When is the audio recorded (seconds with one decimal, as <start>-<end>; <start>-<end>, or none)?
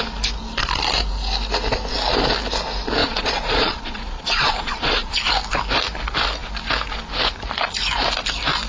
0.0-3.0; 5.2-8.7